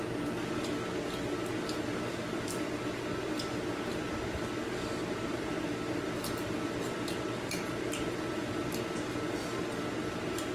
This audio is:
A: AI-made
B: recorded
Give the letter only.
B